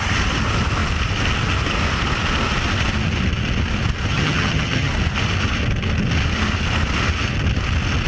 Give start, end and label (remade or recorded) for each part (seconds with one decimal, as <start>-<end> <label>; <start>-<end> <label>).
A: 0.0-4.1 recorded; 4.1-4.9 remade; 4.9-8.1 recorded